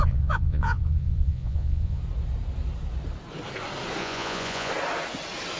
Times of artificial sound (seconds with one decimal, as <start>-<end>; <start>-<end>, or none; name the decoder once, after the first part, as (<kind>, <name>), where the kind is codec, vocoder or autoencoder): 0.0-2.0 (vocoder, Vocos); 4.0-4.7